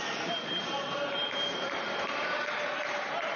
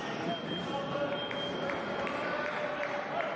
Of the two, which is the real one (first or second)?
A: second